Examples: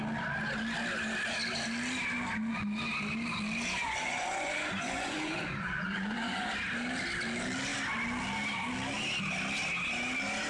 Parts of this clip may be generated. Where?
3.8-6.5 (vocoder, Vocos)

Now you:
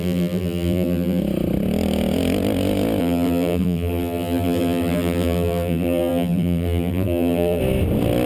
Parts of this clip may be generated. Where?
0.0-1.2 (vocoder, BigVGAN v2); 3.0-7.6

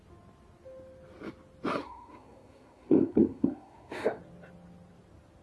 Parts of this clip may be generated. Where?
1.8-4.2 (codec, SNAC)

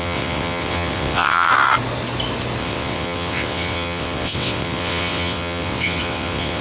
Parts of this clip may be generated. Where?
0.0-1.5 (vocoder, WaveNeXt); 2.6-6.6

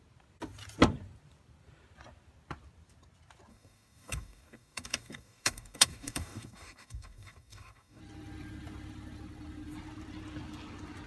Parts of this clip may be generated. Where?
3.5-8.0 (codec, DAC)

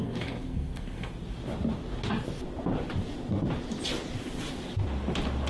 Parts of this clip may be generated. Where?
0.0-1.1 (codec, SNAC)